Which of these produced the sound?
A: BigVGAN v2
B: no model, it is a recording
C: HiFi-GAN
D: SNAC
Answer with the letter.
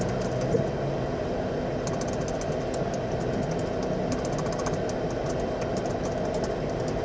B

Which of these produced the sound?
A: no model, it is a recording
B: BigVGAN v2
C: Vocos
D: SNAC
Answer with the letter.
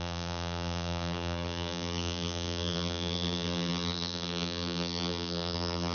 B